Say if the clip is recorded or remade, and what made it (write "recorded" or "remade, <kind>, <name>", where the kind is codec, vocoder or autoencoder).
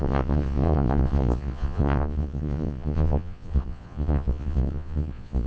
remade, vocoder, Vocos